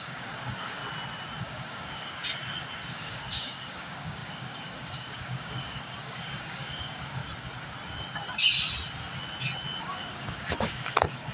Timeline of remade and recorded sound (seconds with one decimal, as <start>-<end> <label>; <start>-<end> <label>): 0.0-0.8 remade; 0.8-1.4 recorded; 1.4-2.2 remade; 2.2-2.9 recorded; 2.9-7.2 remade; 7.2-9.8 recorded; 9.8-11.3 remade